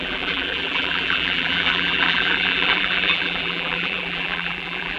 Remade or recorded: remade